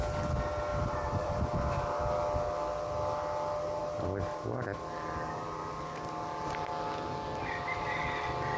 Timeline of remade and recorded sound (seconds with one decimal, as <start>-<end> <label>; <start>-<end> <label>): 0.0-0.7 recorded; 0.7-2.0 remade; 2.0-8.6 recorded